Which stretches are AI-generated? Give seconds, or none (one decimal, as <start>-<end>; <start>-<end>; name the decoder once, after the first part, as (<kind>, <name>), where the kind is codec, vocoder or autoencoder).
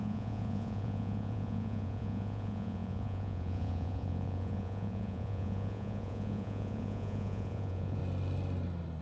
0.0-8.0 (vocoder, Vocos)